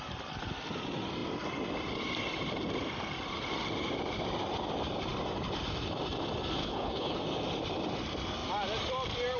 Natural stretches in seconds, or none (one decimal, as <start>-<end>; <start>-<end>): 0.0-6.6; 7.2-9.4